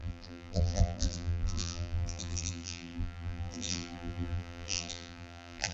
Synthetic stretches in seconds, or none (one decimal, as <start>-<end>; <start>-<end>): 0.0-5.7

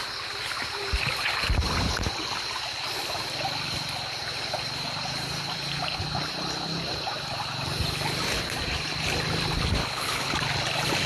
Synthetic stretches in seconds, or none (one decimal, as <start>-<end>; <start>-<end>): 9.8-10.3

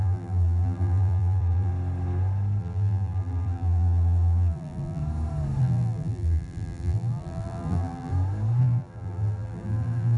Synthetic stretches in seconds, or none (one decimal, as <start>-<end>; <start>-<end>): 0.0-1.7; 2.6-5.0; 5.6-8.1; 8.6-10.2

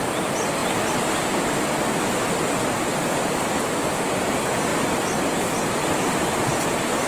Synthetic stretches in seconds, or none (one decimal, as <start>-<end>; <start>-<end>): none

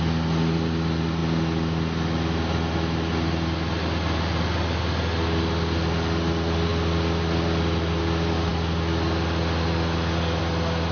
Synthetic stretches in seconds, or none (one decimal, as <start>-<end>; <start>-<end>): none